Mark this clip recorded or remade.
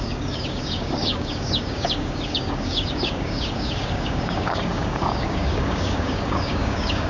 remade